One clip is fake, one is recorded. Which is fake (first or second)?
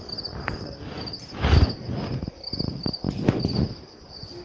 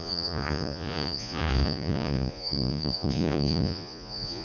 second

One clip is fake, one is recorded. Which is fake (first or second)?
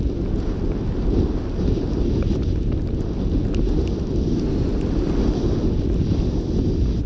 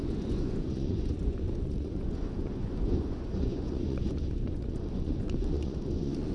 second